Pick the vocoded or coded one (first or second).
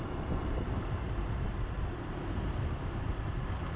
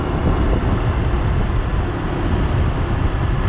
first